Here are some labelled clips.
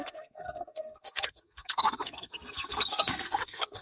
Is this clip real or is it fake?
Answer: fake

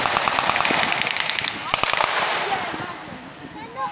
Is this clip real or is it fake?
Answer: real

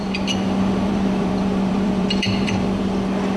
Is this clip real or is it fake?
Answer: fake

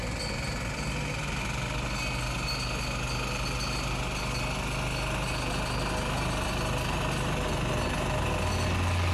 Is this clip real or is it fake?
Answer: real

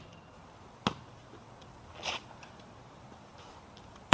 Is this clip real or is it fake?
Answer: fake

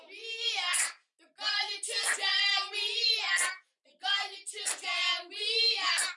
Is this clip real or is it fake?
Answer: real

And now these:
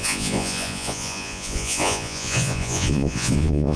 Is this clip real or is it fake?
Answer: fake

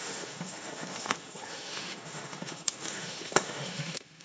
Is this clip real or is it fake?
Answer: fake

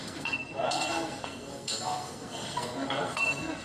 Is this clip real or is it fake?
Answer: fake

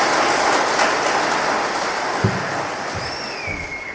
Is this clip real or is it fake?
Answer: real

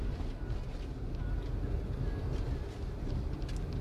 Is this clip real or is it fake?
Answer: real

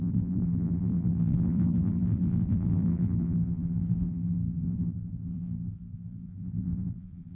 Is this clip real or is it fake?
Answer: fake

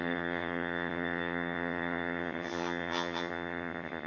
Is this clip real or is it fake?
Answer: fake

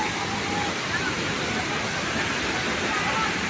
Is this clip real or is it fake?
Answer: real